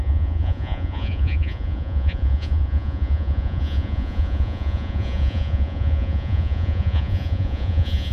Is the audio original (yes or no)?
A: no